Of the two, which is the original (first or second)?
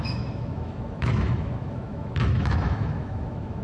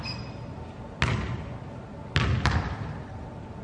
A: second